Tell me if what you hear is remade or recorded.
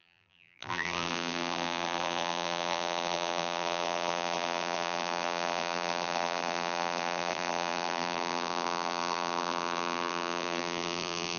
remade